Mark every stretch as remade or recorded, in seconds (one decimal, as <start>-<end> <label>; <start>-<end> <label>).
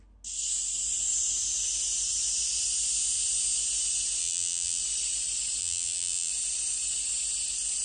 0.0-4.2 recorded; 4.2-4.8 remade; 4.8-5.6 recorded; 5.6-6.3 remade; 6.3-7.8 recorded